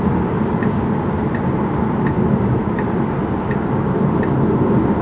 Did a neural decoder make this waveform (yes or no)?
no